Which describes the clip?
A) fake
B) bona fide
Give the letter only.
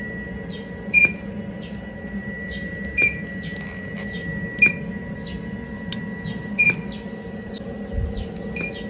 B